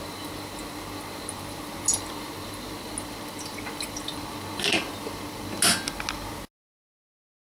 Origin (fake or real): real